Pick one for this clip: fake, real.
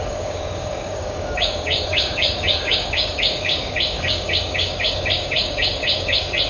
fake